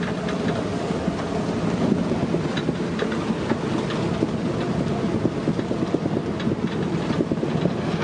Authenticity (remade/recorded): recorded